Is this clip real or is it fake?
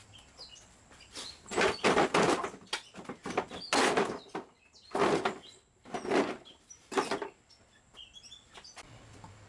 real